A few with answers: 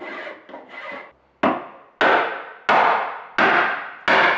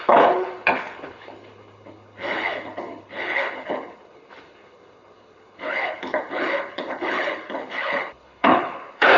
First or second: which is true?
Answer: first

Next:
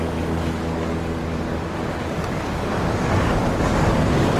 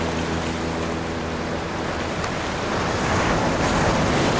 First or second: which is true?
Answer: second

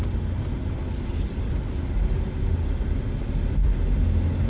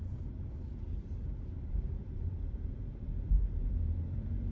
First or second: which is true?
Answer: first